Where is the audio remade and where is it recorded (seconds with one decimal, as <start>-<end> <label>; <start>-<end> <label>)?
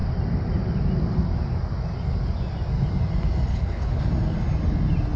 0.0-3.5 recorded; 3.5-4.0 remade; 4.0-5.2 recorded